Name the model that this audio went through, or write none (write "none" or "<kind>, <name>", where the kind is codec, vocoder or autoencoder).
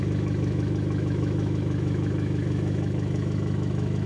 autoencoder, DAC-VAE